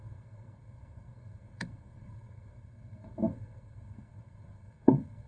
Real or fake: fake